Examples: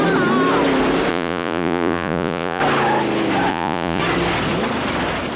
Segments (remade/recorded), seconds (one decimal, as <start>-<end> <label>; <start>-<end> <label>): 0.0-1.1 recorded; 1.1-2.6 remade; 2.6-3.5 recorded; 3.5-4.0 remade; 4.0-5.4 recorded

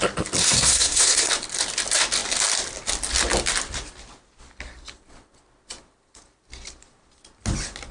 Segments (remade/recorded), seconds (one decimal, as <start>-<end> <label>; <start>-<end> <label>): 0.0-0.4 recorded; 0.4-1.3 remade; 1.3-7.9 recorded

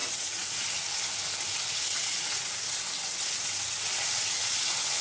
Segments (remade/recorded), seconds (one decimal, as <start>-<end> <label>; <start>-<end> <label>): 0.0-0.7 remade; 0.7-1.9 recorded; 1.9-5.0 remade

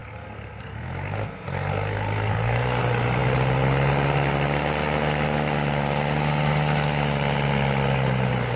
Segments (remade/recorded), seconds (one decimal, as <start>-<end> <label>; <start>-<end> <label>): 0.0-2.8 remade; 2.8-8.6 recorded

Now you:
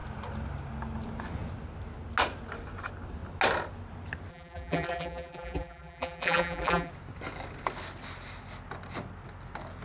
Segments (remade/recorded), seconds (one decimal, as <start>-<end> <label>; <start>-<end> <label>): 0.0-4.3 recorded; 4.3-6.9 remade; 6.9-9.8 recorded

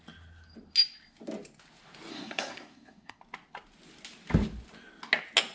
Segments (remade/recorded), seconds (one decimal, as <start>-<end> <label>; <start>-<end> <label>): 0.0-2.1 recorded; 2.1-3.2 remade; 3.2-5.5 recorded

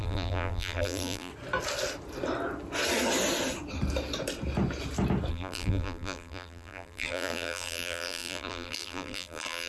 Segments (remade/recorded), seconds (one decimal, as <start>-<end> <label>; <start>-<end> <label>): 0.0-1.3 remade; 1.3-5.3 recorded; 5.3-9.7 remade